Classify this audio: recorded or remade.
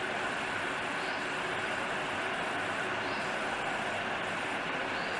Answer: recorded